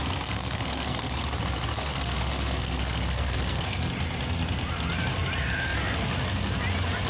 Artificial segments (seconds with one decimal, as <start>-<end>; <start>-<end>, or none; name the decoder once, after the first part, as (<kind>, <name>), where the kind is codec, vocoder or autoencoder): 0.0-1.2 (codec, SNAC); 1.7-3.9